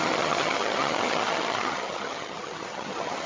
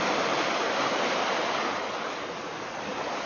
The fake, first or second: first